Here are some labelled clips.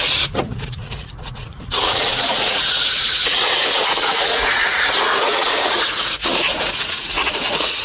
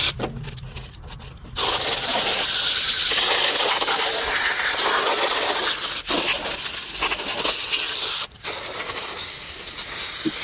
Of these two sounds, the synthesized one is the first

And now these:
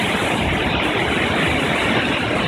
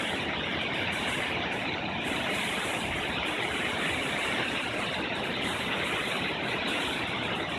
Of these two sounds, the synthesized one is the second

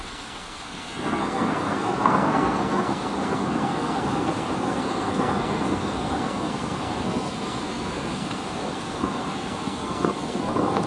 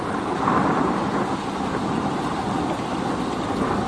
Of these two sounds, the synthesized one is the first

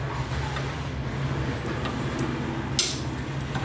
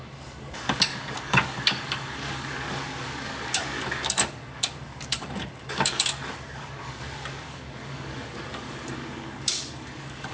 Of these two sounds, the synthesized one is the second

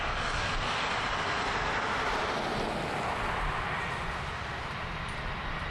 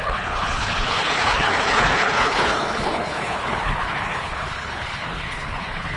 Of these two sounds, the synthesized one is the second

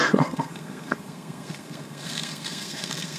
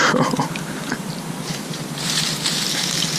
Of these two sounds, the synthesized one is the first